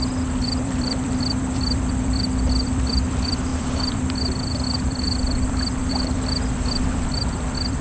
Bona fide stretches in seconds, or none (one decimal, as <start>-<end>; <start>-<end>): none